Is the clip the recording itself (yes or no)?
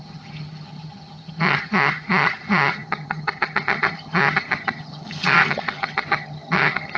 no